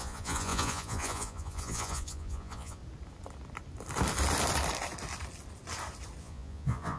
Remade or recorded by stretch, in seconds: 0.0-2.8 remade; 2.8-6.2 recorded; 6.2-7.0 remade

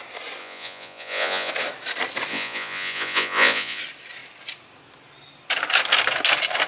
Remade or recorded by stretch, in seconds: 0.0-0.4 recorded; 0.4-1.5 remade; 1.5-2.3 recorded; 2.3-3.8 remade; 3.8-6.7 recorded

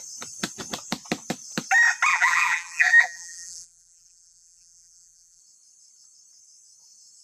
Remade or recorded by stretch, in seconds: 0.0-2.1 recorded; 2.1-5.4 remade; 5.4-7.2 recorded

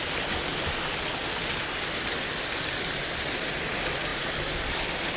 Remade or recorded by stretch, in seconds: 0.0-0.5 remade; 0.5-2.5 recorded; 2.5-5.2 remade